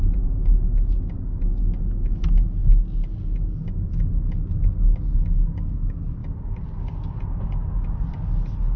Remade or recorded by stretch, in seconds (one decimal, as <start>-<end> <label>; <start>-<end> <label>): 0.0-8.8 recorded